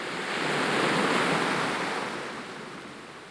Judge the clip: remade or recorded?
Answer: recorded